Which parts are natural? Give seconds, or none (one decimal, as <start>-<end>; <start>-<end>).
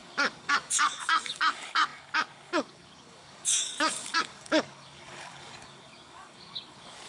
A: none